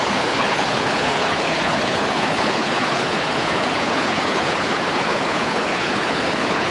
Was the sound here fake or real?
fake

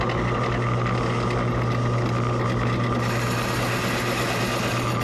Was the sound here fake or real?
real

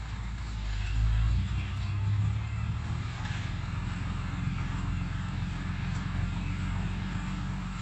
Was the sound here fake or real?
fake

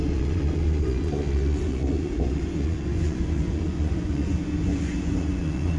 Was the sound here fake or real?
fake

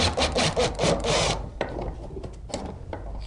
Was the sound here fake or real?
real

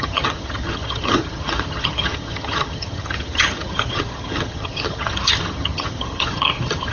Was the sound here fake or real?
fake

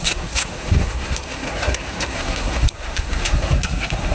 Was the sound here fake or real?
fake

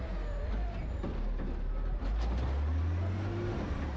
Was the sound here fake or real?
real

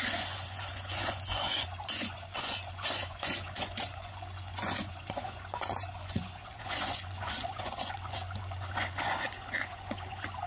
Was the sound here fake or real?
fake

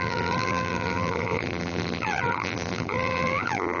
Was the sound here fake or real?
fake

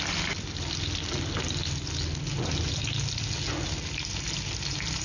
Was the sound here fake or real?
real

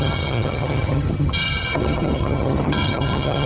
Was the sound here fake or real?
fake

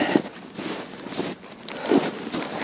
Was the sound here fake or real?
real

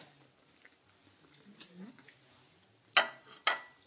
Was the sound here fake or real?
real